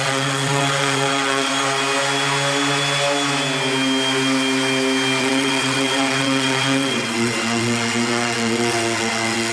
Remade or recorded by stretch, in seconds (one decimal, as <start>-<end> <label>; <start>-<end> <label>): 0.0-1.5 remade; 1.5-5.2 recorded; 5.2-9.5 remade